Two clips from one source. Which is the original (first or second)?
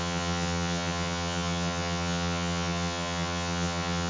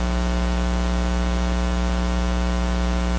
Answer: second